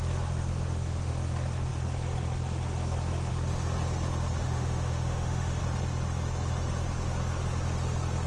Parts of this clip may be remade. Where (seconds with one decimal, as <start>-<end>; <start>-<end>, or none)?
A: 0.5-1.1; 4.4-5.6